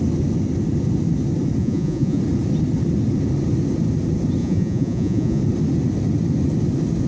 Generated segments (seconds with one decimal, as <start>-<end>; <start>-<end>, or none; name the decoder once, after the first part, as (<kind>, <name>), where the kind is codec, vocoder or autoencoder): 1.6-2.2 (vocoder, Vocos); 4.4-5.4